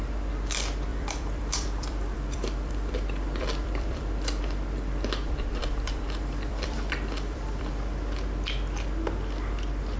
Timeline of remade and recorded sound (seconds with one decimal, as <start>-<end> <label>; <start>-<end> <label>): 0.0-0.9 recorded; 0.9-4.4 remade; 4.4-5.6 recorded; 5.6-7.7 remade; 7.7-10.0 recorded